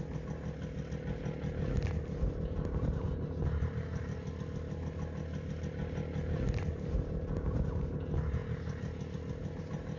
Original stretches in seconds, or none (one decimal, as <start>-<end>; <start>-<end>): 0.0-10.0